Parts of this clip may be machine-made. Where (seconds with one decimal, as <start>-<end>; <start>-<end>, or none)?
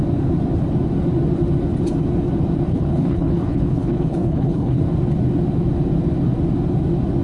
2.7-4.8